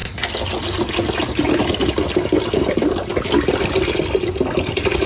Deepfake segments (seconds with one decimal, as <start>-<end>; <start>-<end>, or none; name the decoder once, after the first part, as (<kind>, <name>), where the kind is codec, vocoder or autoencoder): none